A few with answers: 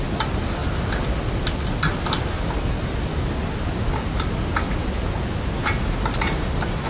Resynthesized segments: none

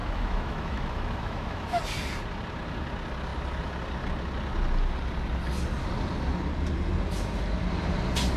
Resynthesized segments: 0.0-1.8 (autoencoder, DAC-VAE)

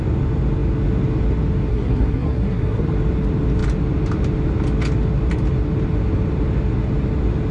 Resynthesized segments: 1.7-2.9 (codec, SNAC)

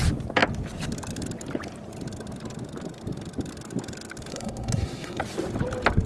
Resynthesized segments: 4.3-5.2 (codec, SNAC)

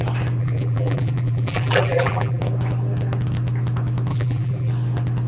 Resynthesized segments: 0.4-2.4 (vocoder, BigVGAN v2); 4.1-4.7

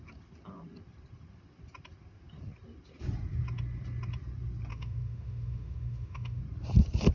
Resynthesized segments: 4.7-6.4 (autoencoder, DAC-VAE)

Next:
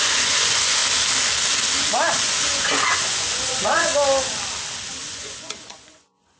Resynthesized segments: 0.0-0.8 (vocoder, Vocos); 2.2-3.9; 5.0-6.4

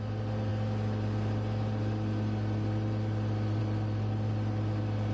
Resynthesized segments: none